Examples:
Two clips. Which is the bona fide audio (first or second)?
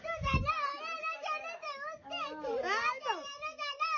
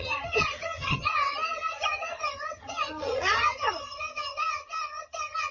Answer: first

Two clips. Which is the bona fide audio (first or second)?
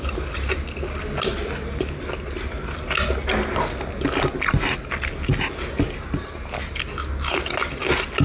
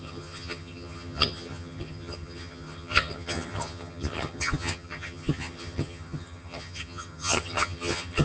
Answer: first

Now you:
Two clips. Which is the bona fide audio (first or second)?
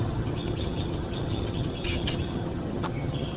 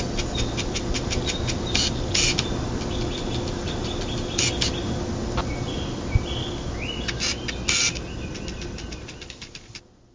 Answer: second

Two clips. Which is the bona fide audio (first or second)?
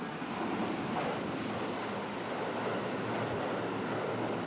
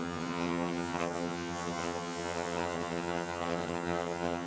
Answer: first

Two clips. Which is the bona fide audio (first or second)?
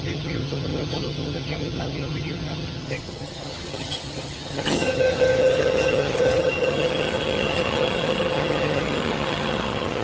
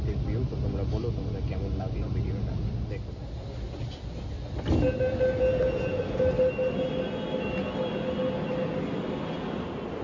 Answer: second